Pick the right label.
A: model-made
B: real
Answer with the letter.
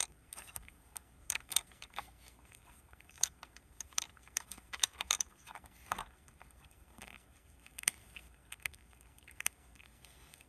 A